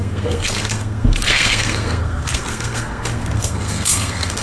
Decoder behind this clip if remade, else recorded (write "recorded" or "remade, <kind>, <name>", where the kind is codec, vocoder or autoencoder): remade, codec, SNAC